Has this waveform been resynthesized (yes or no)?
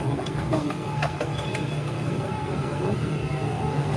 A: yes